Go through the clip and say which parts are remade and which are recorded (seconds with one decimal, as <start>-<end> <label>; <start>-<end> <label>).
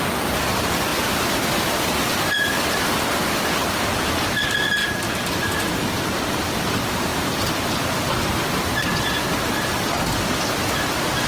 0.0-11.3 recorded